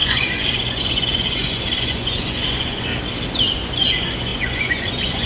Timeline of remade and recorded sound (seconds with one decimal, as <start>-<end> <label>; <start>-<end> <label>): 0.0-2.9 remade; 2.9-3.5 recorded; 3.5-5.3 remade